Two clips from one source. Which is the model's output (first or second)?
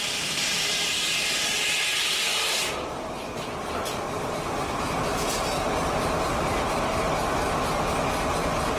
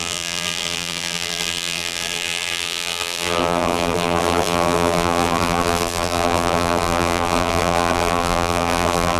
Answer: second